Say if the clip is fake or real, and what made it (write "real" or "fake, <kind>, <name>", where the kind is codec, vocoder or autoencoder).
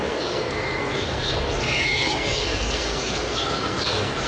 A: fake, codec, SNAC